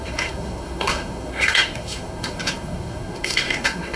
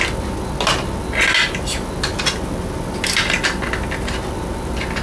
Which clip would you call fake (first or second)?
first